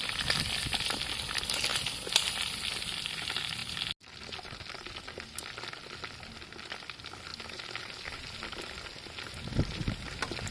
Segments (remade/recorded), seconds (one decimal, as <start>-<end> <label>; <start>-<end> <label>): 0.0-10.5 recorded